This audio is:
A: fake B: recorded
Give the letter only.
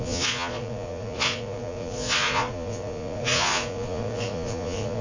A